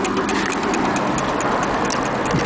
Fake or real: real